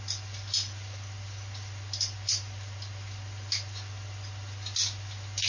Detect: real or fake real